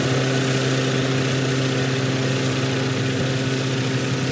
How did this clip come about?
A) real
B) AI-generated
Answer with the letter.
A